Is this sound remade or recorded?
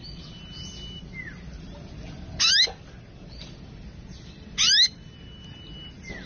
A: recorded